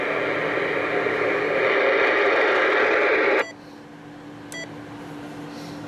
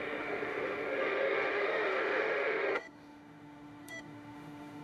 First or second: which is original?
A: first